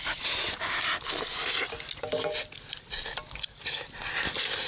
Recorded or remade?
recorded